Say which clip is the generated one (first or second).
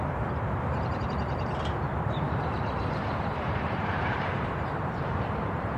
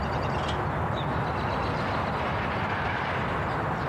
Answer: first